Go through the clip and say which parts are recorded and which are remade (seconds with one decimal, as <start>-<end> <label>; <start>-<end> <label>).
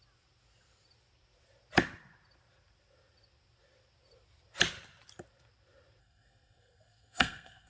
0.0-6.0 recorded; 6.0-7.7 remade